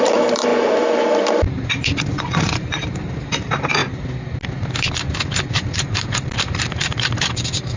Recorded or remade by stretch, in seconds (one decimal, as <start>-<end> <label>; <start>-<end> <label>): 0.0-3.8 remade; 3.8-5.3 recorded; 5.3-7.8 remade